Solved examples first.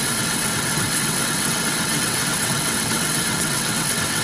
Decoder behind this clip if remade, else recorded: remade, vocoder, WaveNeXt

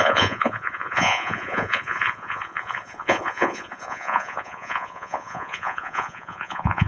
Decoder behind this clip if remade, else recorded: remade, vocoder, Vocos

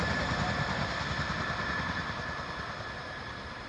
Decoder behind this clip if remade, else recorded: recorded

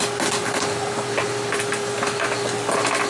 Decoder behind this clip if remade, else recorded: recorded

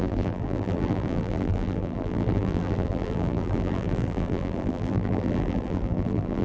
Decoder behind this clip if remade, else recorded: remade, vocoder, BigVGAN v2